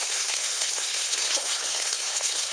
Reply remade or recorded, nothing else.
remade